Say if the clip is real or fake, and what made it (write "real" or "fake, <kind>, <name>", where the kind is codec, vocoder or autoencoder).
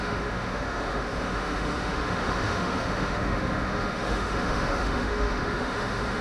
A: fake, autoencoder, DAC-VAE